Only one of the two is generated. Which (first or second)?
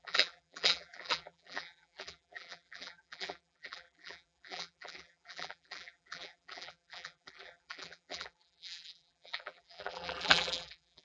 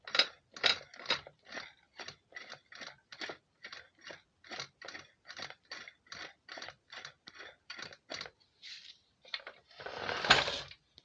first